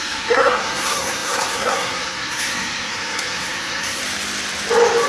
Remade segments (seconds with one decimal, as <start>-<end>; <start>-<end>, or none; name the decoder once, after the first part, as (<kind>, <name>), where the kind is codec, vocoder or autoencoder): 0.0-4.0 (codec, SNAC)